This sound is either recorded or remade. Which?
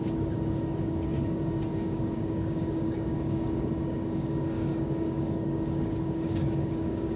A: remade